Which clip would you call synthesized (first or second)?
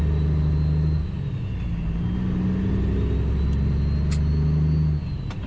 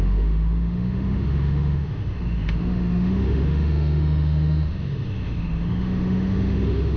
second